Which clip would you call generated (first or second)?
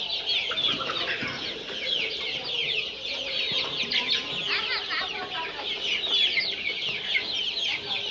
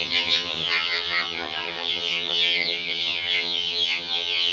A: second